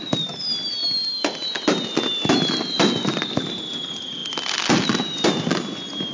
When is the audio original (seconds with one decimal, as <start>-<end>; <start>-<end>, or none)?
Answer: 0.0-6.1